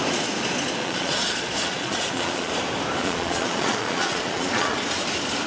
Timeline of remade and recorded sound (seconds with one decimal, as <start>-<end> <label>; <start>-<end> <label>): 0.0-0.8 recorded; 0.8-2.5 remade; 2.5-3.0 recorded; 3.0-4.8 remade; 4.8-5.5 recorded